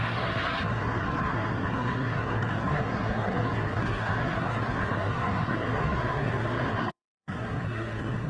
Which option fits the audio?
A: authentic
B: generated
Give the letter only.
B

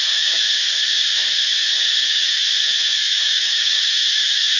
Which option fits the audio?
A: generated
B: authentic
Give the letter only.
A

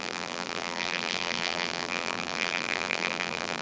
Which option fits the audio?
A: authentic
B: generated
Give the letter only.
B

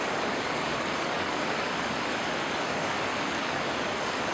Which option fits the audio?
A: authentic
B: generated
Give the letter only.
B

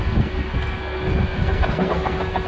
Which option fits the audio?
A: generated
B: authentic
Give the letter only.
A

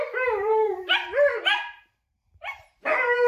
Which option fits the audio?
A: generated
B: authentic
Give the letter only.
A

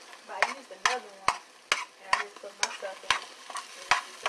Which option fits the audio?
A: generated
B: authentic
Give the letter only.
B